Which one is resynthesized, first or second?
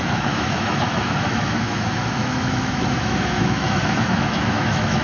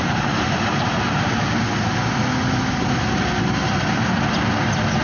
first